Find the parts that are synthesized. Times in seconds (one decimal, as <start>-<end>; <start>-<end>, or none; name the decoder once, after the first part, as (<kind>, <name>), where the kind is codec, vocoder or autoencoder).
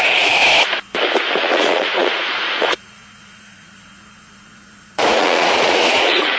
0.0-0.4 (vocoder, Vocos); 1.3-6.4